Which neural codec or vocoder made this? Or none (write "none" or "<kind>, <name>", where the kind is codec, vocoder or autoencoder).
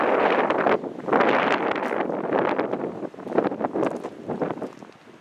none